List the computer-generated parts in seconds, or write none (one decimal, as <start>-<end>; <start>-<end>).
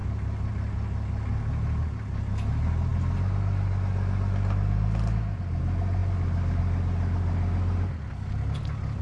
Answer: none